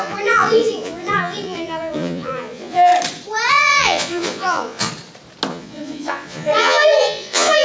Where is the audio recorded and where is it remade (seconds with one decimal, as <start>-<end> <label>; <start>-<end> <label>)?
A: 0.0-2.9 remade; 2.9-3.5 recorded; 3.5-4.9 remade; 4.9-5.5 recorded; 5.5-7.6 remade